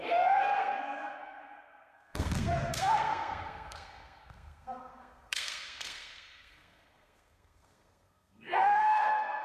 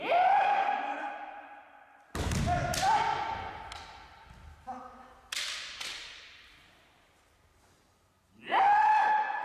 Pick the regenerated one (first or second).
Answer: first